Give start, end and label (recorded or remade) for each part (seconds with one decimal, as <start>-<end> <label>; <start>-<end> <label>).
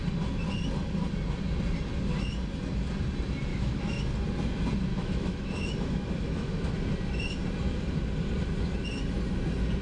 0.0-3.5 recorded; 3.5-4.0 remade; 4.0-4.9 recorded; 4.9-6.7 remade; 6.7-9.8 recorded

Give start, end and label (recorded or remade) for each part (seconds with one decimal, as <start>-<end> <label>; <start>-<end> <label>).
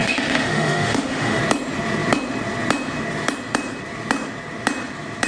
0.0-1.4 remade; 1.4-5.3 recorded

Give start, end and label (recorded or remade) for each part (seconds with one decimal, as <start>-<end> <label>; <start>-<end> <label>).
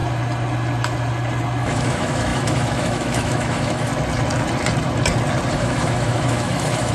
0.0-1.6 recorded; 1.6-3.9 remade; 3.9-5.5 recorded; 5.5-6.9 remade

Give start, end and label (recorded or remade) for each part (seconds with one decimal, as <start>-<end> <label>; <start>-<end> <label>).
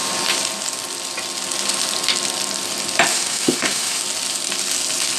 0.0-3.1 recorded; 3.1-4.0 remade; 4.0-5.2 recorded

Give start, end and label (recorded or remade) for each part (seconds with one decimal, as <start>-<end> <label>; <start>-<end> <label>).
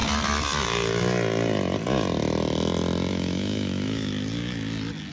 0.0-3.1 recorded; 3.1-4.1 remade; 4.1-5.1 recorded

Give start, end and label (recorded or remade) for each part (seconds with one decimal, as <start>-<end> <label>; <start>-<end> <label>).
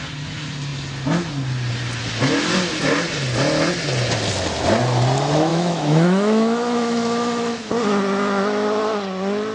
0.0-5.5 recorded; 5.5-7.7 remade; 7.7-9.5 recorded